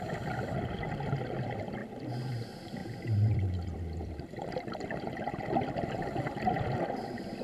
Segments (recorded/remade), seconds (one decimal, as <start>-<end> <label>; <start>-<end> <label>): 0.0-2.8 recorded; 2.8-6.6 remade; 6.6-7.4 recorded